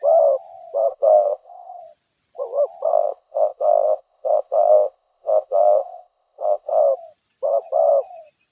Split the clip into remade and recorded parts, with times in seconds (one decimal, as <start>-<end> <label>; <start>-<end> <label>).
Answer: 0.0-0.9 recorded; 0.9-1.8 remade; 1.8-2.9 recorded; 2.9-6.8 remade; 6.8-8.5 recorded